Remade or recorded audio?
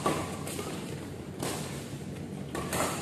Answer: recorded